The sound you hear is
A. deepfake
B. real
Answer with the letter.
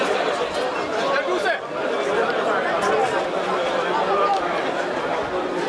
B